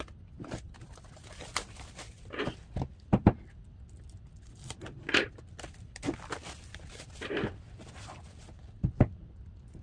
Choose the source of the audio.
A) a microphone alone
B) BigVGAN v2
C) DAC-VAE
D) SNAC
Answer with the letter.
A